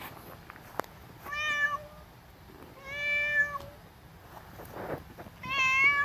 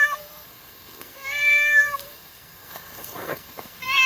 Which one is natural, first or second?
first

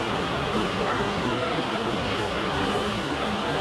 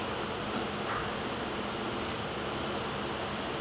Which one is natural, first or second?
second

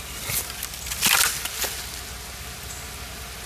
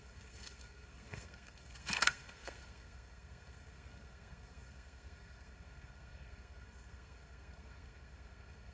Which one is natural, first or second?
first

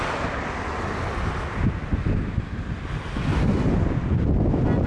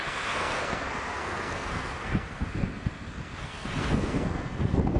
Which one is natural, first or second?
first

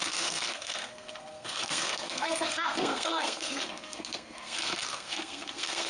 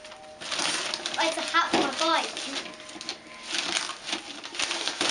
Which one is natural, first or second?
second